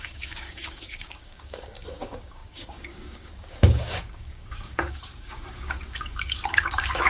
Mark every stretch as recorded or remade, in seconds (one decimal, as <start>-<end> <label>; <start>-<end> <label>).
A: 0.0-7.1 remade